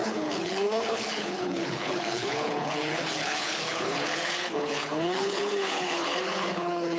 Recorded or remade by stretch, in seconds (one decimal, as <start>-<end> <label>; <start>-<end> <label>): 0.0-7.0 remade